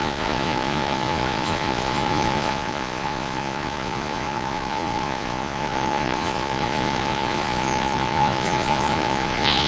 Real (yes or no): no